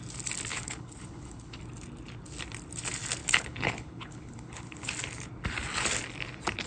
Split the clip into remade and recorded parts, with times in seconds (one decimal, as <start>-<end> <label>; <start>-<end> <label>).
0.0-0.5 recorded; 0.5-1.6 remade; 1.6-3.2 recorded; 3.2-4.9 remade; 4.9-6.7 recorded

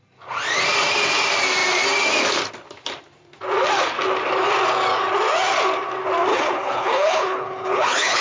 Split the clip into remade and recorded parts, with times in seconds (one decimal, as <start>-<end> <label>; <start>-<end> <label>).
0.0-6.3 recorded; 6.3-8.2 remade

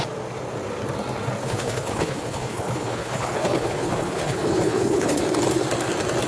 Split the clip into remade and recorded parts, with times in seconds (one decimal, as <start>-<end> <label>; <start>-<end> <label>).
0.0-1.4 recorded; 1.4-5.2 remade; 5.2-6.3 recorded

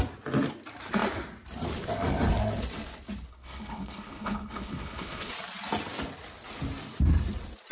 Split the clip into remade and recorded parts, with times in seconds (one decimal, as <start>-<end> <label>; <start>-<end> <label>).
0.0-3.3 recorded; 3.3-5.3 remade; 5.3-7.7 recorded

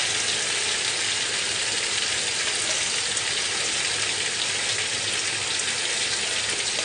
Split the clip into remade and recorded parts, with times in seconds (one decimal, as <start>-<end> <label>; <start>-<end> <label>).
0.0-6.8 recorded

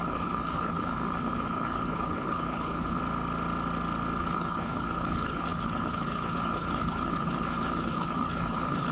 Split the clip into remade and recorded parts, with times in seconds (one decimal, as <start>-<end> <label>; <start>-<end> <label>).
0.0-3.0 remade; 3.0-4.2 recorded; 4.2-8.9 remade